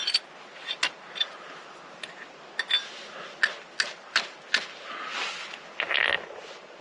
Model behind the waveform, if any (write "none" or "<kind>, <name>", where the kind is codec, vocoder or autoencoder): none